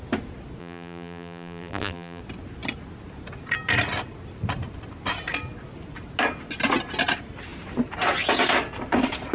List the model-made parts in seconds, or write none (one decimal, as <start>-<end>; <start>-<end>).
0.6-2.2